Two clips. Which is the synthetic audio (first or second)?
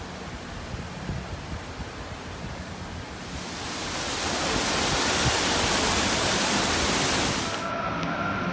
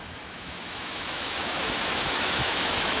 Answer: second